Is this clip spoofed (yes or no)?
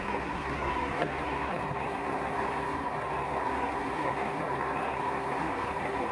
yes